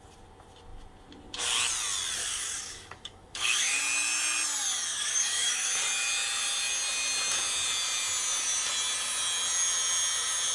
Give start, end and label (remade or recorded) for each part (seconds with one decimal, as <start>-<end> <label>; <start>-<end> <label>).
0.0-2.2 recorded; 2.2-3.8 remade; 3.8-4.9 recorded; 4.9-5.7 remade; 5.7-10.5 recorded